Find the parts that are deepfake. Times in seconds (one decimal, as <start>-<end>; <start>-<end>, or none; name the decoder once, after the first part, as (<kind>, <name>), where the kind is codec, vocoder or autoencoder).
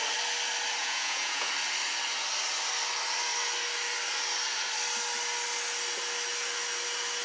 0.8-1.5 (vocoder, Vocos)